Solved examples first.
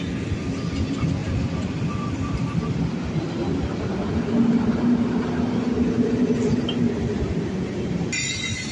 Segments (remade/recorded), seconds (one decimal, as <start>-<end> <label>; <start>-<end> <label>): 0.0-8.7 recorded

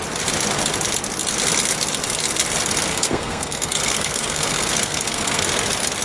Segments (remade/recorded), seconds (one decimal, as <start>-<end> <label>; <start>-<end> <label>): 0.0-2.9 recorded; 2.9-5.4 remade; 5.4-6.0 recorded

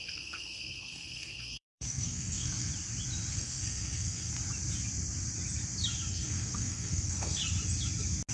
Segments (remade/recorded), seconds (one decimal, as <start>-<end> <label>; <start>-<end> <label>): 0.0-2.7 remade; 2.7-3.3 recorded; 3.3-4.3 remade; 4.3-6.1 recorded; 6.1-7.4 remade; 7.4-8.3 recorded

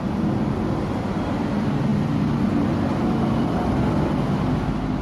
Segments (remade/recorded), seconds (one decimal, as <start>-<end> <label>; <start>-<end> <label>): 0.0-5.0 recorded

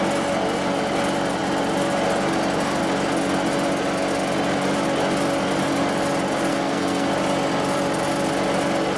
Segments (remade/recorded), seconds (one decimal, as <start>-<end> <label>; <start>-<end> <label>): 0.0-6.5 recorded; 6.5-7.1 remade; 7.1-9.0 recorded

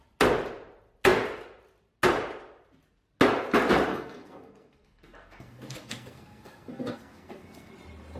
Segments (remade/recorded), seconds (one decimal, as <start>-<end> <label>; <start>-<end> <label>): 0.0-3.9 recorded; 3.9-7.7 remade; 7.7-8.2 recorded

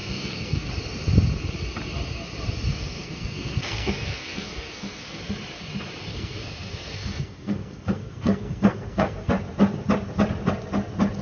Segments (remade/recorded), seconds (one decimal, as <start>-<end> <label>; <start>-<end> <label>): 0.0-0.7 remade; 0.7-2.7 recorded; 2.7-5.2 remade; 5.2-6.1 recorded; 6.1-9.3 remade; 9.3-11.2 recorded

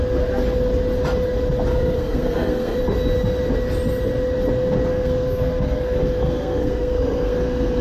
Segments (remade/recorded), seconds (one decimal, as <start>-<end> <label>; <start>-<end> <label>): 0.0-1.7 recorded; 1.7-2.8 remade; 2.8-4.9 recorded; 4.9-7.8 remade